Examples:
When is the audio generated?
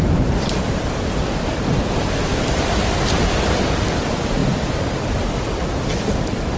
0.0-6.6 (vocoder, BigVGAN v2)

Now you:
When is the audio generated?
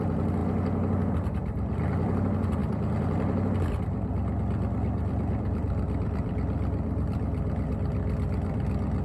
0.0-0.4 (vocoder, BigVGAN v2); 1.1-9.0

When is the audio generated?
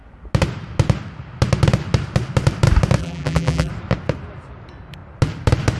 3.0-3.7 (vocoder, BigVGAN v2)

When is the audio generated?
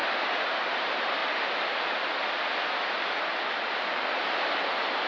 0.0-1.2 (vocoder, BigVGAN v2); 3.9-5.1